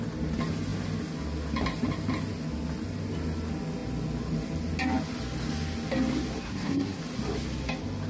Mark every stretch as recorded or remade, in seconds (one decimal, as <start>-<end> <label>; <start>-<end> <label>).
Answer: 0.0-6.4 recorded; 6.4-7.0 remade; 7.0-8.1 recorded